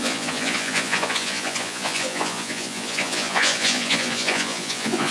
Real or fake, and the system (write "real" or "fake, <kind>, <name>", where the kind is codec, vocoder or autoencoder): fake, vocoder, Vocos